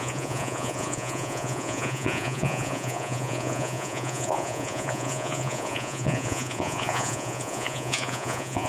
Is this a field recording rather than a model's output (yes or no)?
no